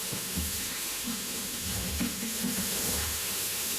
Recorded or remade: remade